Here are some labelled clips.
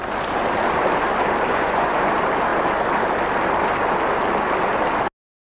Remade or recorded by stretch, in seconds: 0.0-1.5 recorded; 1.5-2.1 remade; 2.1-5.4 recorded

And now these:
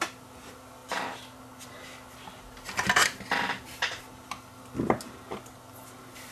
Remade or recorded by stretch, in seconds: 0.0-6.3 recorded